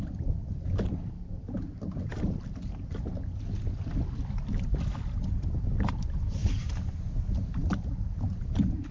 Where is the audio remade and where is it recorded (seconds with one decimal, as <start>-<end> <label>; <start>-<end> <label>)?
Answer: 0.0-8.9 recorded